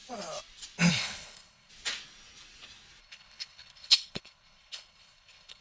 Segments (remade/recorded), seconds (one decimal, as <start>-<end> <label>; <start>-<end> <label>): 0.0-0.9 recorded; 0.9-1.7 remade; 1.7-3.0 recorded; 3.0-5.6 remade